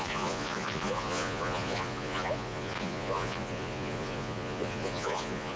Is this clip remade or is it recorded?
remade